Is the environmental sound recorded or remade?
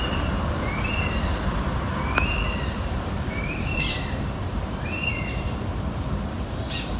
remade